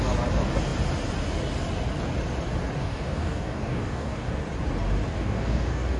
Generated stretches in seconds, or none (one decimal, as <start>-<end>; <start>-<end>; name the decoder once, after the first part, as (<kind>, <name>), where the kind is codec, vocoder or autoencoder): 2.8-4.3 (codec, DAC); 5.1-6.0